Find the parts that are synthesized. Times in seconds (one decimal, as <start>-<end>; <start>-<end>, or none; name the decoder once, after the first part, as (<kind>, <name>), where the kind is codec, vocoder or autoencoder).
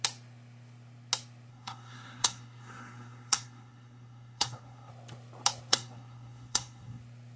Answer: 1.5-4.9 (codec, SNAC); 5.7-7.0